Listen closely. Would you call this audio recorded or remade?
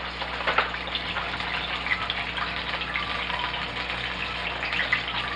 recorded